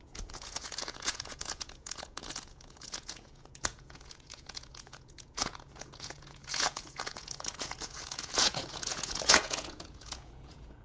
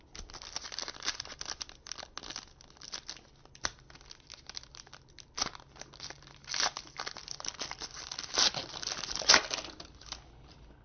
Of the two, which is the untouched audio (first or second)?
second